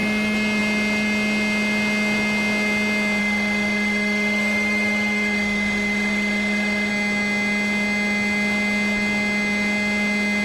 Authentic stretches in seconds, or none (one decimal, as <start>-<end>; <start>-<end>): 0.0-3.2; 6.9-10.4